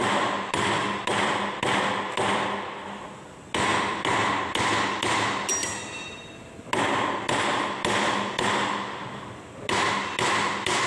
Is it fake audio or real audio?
real